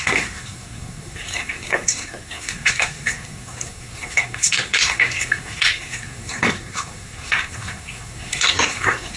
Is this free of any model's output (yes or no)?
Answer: no